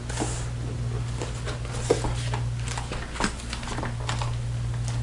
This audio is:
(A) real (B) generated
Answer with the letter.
A